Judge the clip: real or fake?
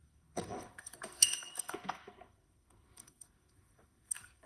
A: fake